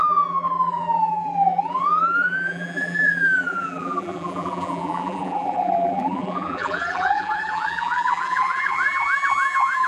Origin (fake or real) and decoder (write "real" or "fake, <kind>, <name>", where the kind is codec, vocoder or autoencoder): fake, vocoder, BigVGAN v2